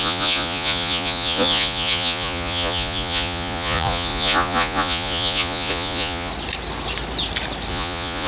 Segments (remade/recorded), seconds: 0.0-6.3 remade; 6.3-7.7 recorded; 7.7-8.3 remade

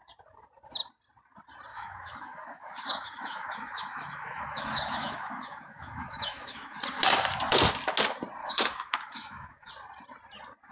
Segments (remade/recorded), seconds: 0.0-1.7 recorded; 1.7-6.8 remade; 6.8-8.4 recorded; 8.4-9.7 remade; 9.7-10.7 recorded

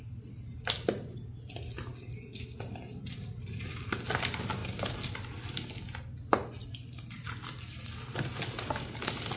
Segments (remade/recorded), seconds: 0.0-9.4 recorded

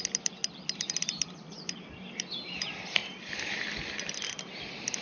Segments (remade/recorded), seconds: 0.0-5.0 recorded

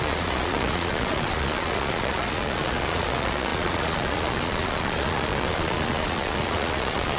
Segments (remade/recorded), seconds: 0.0-7.2 remade

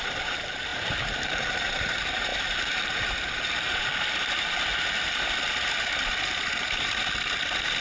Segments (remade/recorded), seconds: 0.0-4.7 remade; 4.7-7.8 recorded